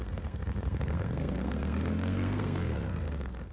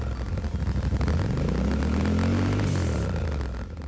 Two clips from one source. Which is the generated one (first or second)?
first